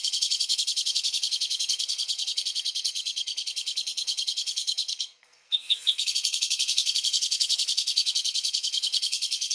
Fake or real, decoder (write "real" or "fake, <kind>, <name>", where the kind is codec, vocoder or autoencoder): fake, codec, SNAC